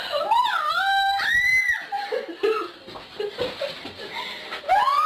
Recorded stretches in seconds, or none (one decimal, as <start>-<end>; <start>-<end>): 0.0-5.1